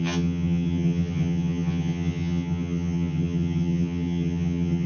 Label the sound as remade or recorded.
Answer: remade